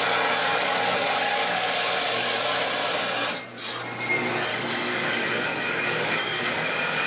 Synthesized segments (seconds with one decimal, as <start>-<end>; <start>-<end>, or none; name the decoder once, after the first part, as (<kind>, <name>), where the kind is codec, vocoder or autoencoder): 0.4-2.4 (codec, DAC); 4.5-7.1